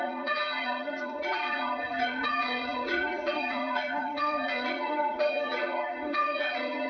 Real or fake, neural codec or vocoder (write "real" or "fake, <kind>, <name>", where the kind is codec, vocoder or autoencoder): fake, vocoder, Vocos